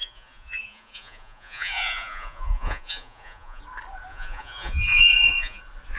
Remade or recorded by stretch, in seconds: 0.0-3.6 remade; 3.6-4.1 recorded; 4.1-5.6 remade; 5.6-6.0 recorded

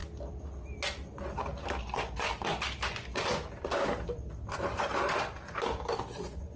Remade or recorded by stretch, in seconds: 0.0-1.8 recorded; 1.8-2.3 remade; 2.3-2.9 recorded; 2.9-3.3 remade; 3.3-6.0 recorded; 6.0-6.6 remade

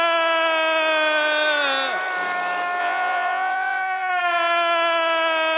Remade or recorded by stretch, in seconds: 0.0-2.8 recorded; 2.8-4.1 remade; 4.1-5.6 recorded

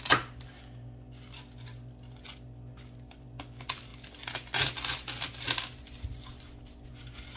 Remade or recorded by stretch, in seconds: 0.0-7.4 recorded

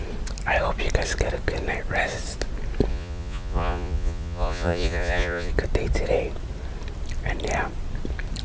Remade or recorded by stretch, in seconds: 0.0-2.9 recorded; 2.9-5.5 remade; 5.5-8.4 recorded

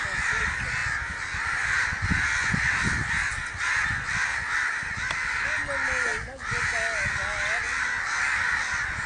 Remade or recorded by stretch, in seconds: 0.0-9.1 recorded